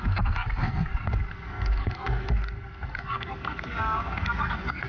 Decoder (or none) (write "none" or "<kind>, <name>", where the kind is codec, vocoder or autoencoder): codec, SNAC